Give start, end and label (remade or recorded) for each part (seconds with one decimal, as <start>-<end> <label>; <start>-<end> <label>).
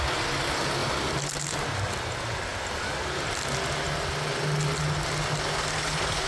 0.0-6.3 recorded